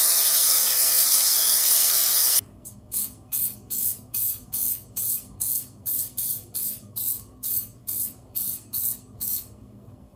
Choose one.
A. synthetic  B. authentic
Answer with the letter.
A